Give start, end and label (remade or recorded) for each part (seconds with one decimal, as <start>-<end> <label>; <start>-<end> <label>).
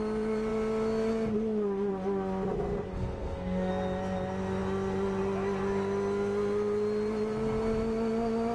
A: 0.0-2.9 recorded; 2.9-3.7 remade; 3.7-8.5 recorded